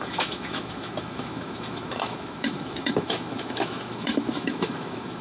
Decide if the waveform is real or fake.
fake